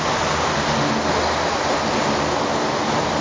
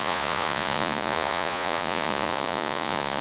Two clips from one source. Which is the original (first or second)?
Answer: first